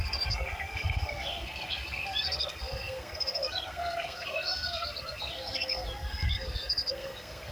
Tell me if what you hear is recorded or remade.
remade